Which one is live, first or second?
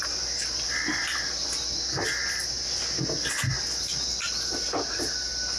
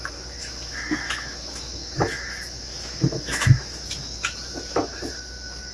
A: first